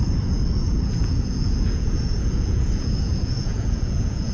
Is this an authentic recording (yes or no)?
no